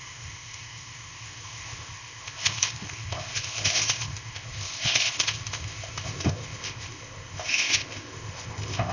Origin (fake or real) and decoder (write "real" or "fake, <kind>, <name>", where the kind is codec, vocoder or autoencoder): fake, codec, ZipCodec